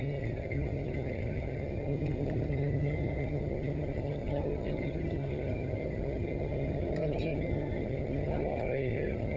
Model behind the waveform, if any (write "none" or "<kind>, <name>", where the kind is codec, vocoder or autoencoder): vocoder, HiFi-GAN